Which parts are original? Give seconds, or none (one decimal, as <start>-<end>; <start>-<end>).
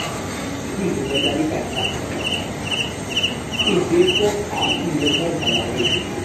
0.0-6.2